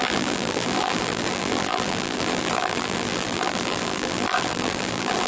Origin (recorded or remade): remade